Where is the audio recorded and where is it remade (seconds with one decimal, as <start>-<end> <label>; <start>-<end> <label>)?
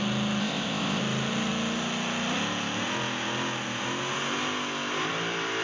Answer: 0.0-0.4 recorded; 0.4-1.0 remade; 1.0-5.6 recorded